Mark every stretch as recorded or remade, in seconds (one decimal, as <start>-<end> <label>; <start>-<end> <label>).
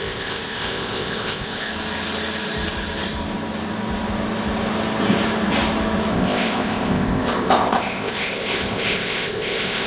0.0-1.7 remade; 1.7-6.1 recorded; 6.1-9.9 remade